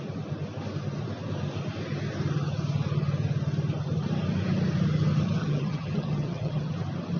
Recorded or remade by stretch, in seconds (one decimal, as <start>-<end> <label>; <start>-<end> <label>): 0.0-5.4 recorded; 5.4-6.7 remade; 6.7-7.2 recorded